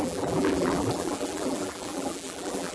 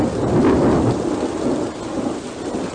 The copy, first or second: first